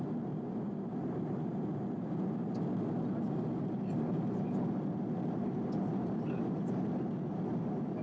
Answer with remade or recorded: recorded